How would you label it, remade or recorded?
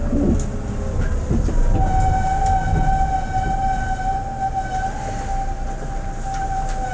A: recorded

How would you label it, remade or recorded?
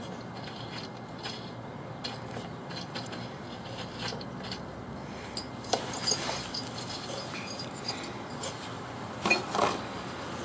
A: recorded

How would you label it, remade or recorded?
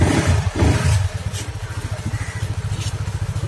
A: recorded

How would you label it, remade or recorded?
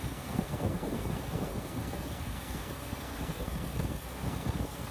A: remade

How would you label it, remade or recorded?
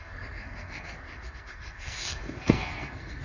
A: remade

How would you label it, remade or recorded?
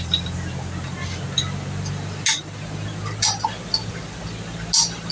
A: recorded